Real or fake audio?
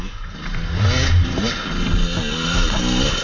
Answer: real